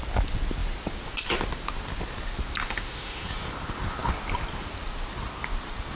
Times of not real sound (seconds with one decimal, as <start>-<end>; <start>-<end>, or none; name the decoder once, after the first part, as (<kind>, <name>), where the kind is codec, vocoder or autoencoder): 2.6-3.3 (autoencoder, DAC-VAE)